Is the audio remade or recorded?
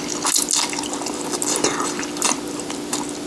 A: recorded